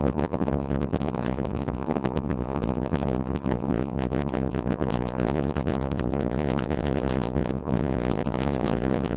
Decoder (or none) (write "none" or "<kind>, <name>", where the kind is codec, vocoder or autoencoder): vocoder, Vocos